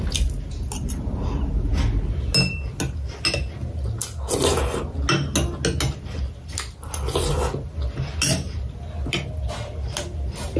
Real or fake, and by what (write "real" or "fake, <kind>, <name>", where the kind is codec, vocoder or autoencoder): real